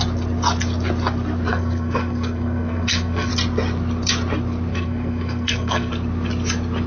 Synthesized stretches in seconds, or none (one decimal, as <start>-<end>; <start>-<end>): 1.5-3.3; 4.7-5.9